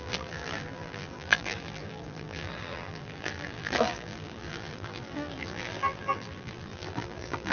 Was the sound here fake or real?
fake